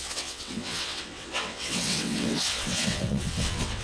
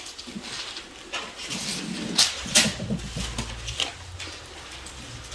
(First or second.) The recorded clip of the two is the second